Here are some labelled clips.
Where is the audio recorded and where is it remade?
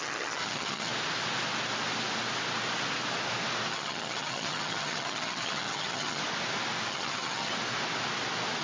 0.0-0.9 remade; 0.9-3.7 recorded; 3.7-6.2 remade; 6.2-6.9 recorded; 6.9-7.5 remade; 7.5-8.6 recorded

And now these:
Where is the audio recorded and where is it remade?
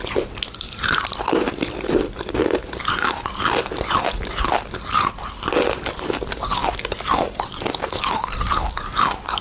0.0-9.4 recorded